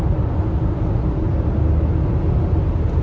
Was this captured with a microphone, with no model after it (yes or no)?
yes